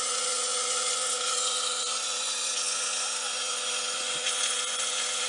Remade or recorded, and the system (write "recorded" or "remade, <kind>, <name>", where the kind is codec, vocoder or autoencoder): remade, vocoder, Vocos